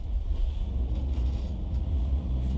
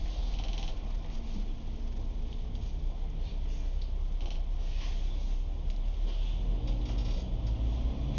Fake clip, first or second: first